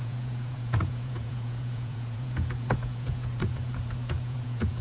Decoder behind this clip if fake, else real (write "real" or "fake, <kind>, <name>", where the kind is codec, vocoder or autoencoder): fake, vocoder, Vocos